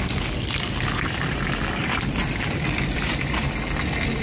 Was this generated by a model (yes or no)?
yes